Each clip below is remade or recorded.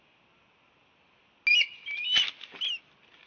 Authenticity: recorded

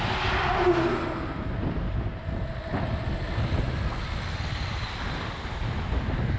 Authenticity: recorded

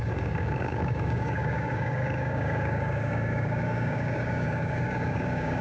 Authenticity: remade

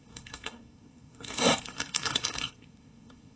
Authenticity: remade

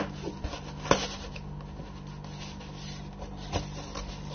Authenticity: recorded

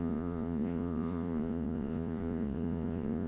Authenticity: remade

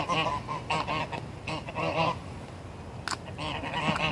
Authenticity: recorded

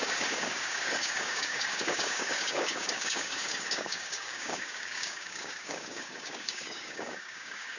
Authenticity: remade